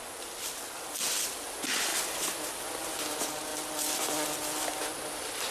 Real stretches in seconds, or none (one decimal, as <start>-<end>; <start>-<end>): 0.0-5.5